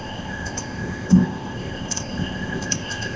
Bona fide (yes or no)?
no